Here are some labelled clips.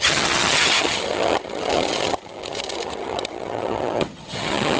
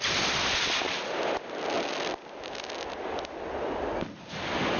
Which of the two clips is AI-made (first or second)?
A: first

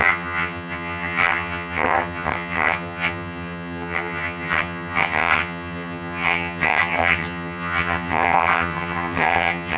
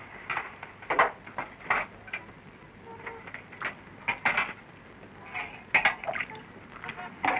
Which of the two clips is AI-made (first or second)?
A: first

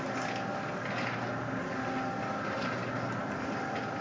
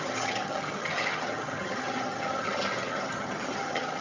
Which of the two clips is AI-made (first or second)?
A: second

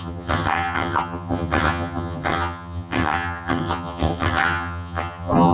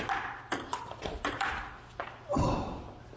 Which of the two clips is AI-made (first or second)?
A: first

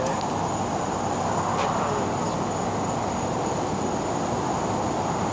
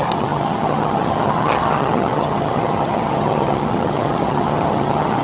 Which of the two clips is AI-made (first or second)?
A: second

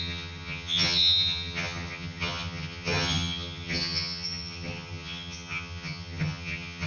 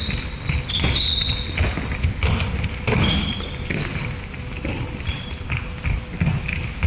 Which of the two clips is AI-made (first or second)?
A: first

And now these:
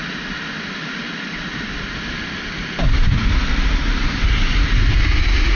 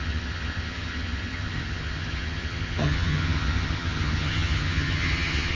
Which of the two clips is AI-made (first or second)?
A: second